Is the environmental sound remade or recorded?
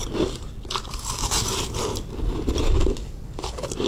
recorded